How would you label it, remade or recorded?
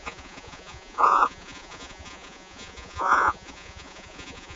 remade